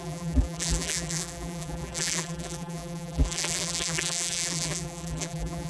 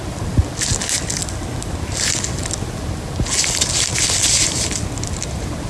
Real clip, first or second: second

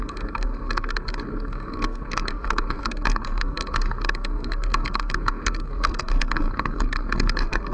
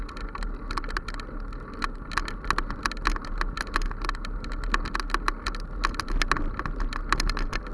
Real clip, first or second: second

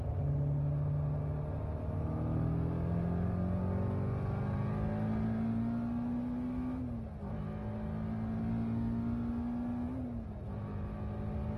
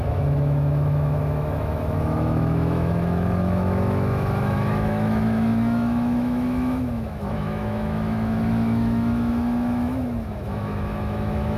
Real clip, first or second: first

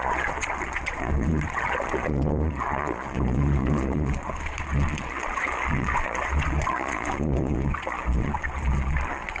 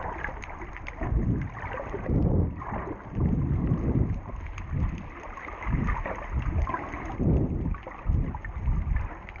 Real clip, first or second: second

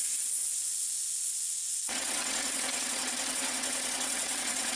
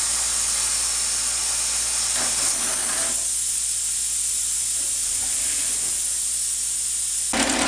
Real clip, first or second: second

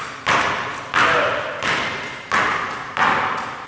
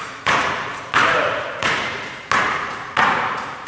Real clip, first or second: first